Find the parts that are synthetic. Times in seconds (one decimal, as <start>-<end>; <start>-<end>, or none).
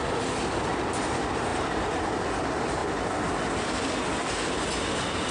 none